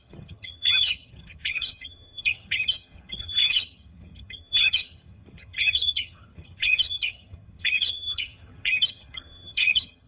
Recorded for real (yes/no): no